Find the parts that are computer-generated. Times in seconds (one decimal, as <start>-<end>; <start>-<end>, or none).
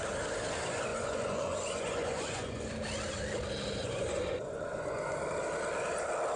0.9-2.7; 3.8-5.2